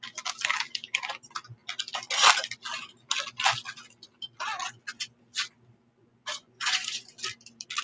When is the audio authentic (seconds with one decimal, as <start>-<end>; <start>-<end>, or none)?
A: 0.0-6.0; 7.2-7.8